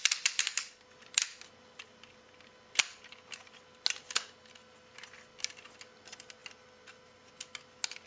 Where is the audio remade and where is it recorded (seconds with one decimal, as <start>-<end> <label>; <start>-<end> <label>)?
0.0-8.1 recorded